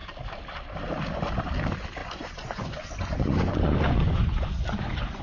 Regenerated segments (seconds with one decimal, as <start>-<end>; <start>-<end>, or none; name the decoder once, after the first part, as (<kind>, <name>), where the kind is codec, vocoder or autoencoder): 2.0-5.2 (vocoder, Vocos)